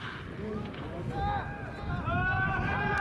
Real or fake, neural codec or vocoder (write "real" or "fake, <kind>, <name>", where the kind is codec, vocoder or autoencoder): real